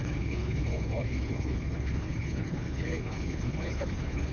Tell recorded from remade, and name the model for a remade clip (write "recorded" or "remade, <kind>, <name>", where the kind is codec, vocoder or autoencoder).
remade, codec, HILCodec